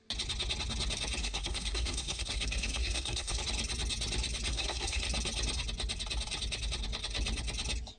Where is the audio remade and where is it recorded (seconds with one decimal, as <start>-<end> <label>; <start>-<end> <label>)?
0.0-1.2 recorded; 1.2-3.4 remade; 3.4-4.5 recorded; 4.5-5.0 remade; 5.0-8.0 recorded